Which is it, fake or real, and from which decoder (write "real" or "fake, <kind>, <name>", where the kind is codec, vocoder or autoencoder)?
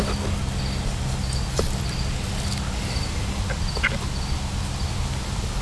real